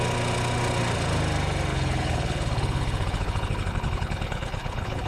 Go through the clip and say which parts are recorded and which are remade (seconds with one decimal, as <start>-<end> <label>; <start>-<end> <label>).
0.0-1.7 recorded; 1.7-5.1 remade